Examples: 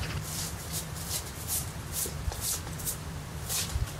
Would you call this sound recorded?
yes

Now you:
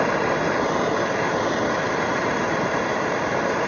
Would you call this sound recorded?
yes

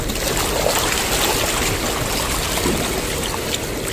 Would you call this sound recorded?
yes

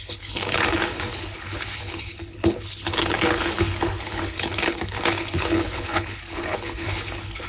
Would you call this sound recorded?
no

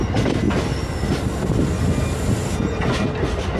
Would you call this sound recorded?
yes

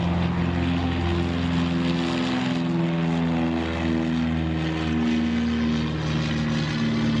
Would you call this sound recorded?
yes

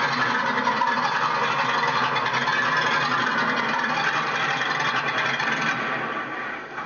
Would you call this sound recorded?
yes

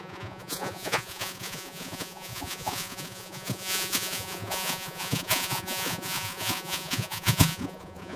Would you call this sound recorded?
no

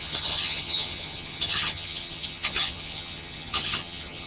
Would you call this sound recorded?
no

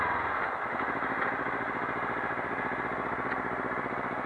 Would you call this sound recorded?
yes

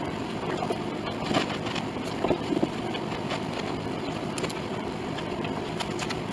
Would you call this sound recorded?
yes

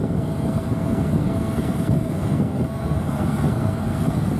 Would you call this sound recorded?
no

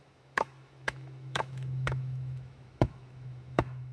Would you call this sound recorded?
no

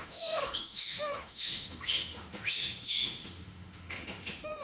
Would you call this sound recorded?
no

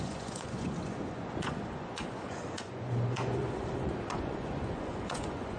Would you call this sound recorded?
no